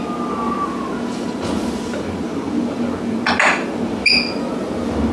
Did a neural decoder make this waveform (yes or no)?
no